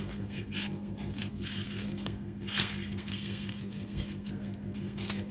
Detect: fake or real fake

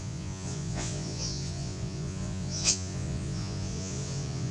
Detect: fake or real fake